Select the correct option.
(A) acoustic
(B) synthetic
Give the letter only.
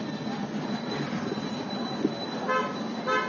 A